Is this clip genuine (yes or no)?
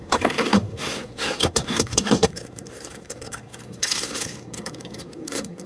no